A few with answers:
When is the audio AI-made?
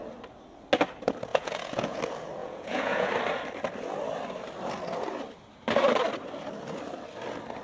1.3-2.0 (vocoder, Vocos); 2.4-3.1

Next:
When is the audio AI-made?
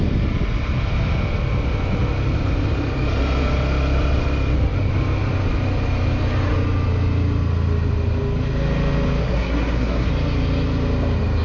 9.2-10.1 (codec, SNAC)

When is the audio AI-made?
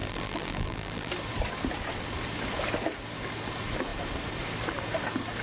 0.0-1.1 (vocoder, BigVGAN v2)